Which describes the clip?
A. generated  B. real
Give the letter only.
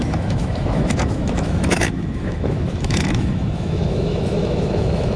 A